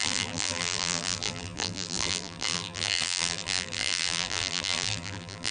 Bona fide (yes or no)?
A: no